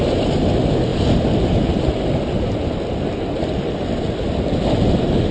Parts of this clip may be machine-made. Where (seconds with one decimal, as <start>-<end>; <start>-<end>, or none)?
none

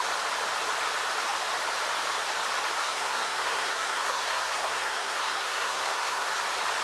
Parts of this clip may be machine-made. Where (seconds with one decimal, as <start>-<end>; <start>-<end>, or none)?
2.8-6.3

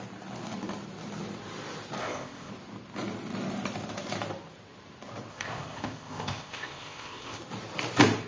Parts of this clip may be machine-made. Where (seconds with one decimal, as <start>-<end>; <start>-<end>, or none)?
2.0-2.5; 5.3-7.4

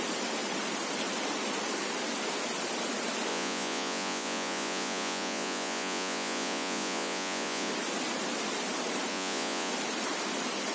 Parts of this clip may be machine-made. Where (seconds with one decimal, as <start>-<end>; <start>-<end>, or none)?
3.3-7.7; 9.1-9.7

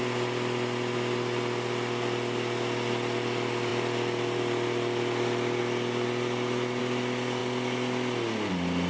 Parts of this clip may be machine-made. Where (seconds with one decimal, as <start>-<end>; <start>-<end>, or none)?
none

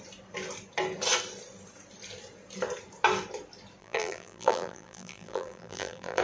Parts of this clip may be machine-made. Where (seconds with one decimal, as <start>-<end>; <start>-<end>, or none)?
3.8-6.2